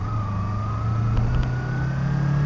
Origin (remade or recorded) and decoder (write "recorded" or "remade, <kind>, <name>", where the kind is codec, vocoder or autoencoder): recorded